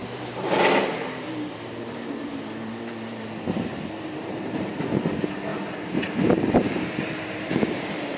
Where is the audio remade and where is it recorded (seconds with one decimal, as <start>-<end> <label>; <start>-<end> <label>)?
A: 0.0-4.7 remade; 4.7-5.5 recorded; 5.5-8.2 remade